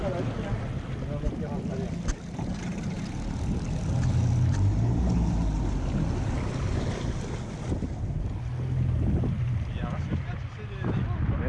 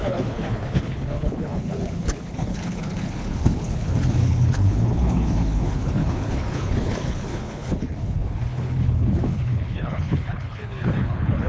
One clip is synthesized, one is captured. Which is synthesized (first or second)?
second